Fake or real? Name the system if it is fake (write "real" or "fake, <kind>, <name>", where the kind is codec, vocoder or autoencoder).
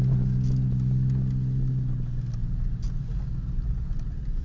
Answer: real